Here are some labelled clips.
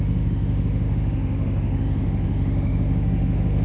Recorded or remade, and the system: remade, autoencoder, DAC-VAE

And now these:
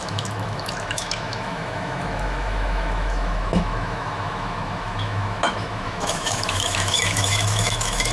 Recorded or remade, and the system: remade, autoencoder, DAC-VAE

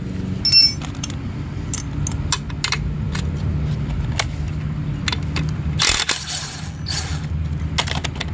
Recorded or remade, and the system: recorded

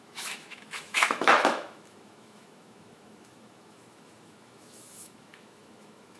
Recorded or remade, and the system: remade, autoencoder, DAC-VAE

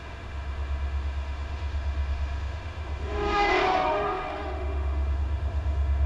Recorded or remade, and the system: remade, autoencoder, DAC-VAE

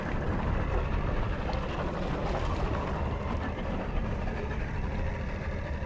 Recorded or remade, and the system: recorded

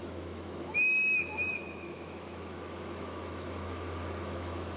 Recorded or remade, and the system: remade, autoencoder, DAC-VAE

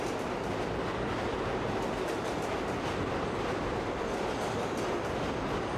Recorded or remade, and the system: recorded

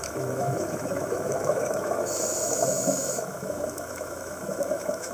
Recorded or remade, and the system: remade, autoencoder, DAC-VAE